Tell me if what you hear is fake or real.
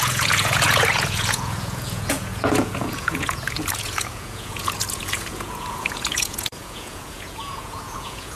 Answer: fake